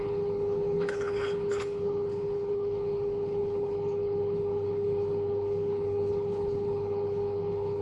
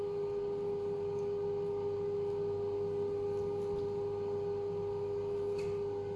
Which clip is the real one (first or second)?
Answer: second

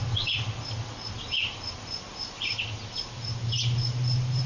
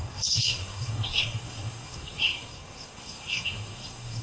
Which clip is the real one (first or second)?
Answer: first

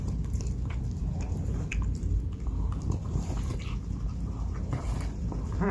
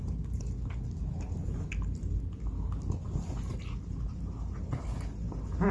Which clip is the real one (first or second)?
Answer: second